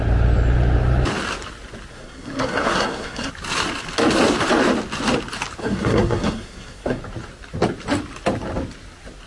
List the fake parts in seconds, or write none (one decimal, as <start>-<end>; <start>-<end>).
1.9-3.3; 5.6-7.0